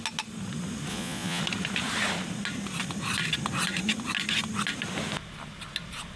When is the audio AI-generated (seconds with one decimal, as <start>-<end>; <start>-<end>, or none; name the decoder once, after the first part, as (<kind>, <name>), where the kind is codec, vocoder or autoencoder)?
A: 0.9-1.4 (vocoder, Vocos)